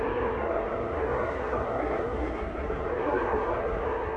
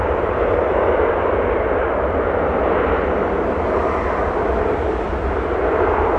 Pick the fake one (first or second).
first